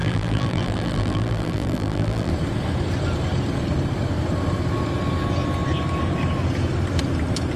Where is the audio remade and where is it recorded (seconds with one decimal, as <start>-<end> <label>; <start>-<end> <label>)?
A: 0.0-2.3 remade; 2.3-7.6 recorded